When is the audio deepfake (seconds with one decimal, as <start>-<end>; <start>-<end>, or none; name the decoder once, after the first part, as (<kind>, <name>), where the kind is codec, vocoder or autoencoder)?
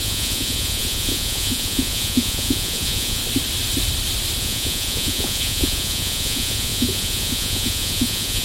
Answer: 0.0-3.2 (vocoder, Vocos); 4.4-8.4